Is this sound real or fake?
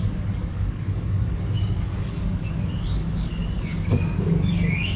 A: fake